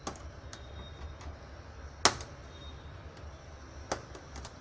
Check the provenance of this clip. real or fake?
real